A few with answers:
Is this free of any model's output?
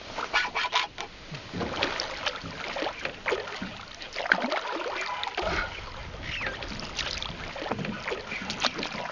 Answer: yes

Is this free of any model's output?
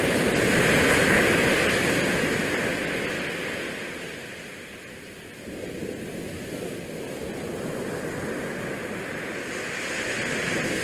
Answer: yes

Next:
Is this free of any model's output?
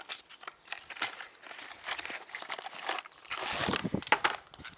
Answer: yes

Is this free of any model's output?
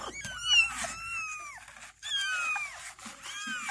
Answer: yes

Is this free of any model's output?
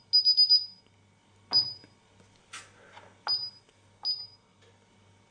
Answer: yes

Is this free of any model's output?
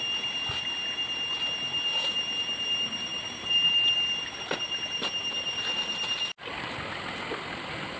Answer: yes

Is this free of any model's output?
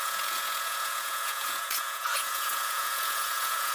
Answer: no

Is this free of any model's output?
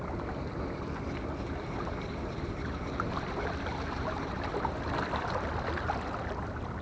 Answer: yes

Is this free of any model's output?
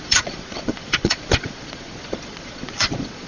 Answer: no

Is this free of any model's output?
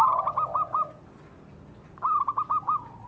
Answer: yes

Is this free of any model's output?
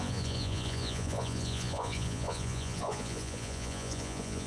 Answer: no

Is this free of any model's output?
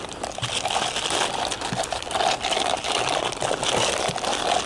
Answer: yes